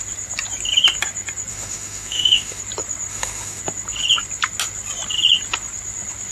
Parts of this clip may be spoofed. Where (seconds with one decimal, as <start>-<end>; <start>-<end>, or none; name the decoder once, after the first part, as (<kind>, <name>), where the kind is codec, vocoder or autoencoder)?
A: 1.5-2.6 (autoencoder, DAC-VAE); 3.1-3.6